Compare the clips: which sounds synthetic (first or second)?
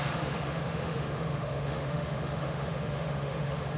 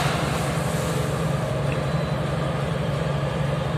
first